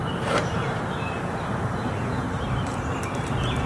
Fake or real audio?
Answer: fake